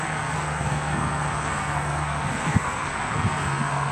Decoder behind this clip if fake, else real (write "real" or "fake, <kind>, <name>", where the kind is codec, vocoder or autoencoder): fake, codec, SNAC